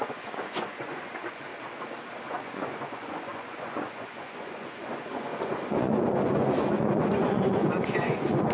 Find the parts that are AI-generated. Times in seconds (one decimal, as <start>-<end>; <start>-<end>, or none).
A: 0.0-1.5; 2.3-8.5